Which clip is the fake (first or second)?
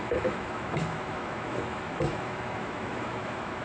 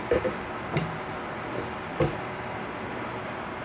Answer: first